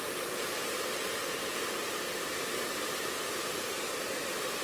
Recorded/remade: recorded